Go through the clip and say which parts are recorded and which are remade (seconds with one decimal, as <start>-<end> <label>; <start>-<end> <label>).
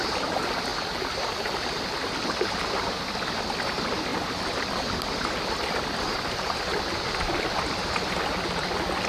0.0-9.1 recorded